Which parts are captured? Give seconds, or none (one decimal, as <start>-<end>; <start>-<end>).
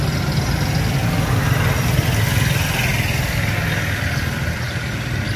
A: 0.0-5.4